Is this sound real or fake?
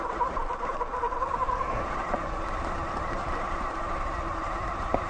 fake